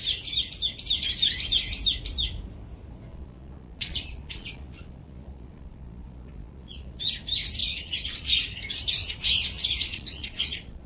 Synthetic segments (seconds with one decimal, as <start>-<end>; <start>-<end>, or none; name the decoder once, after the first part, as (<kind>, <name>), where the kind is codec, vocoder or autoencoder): 3.1-7.0 (vocoder, Vocos); 7.6-8.4; 9.0-10.9